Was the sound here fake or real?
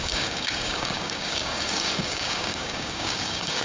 fake